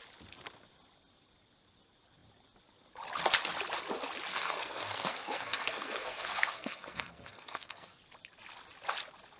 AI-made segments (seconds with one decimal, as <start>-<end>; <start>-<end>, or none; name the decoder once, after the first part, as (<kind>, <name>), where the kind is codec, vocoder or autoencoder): 4.3-8.0 (codec, SNAC)